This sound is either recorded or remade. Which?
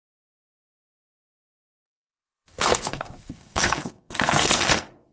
remade